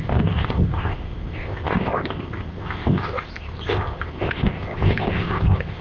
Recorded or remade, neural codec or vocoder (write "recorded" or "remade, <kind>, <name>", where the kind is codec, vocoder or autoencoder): remade, codec, ZipCodec